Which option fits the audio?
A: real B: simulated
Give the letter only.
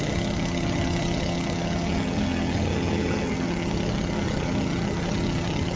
B